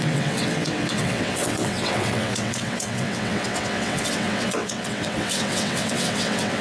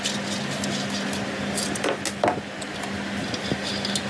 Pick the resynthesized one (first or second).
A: first